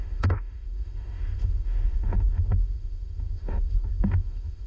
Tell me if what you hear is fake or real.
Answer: fake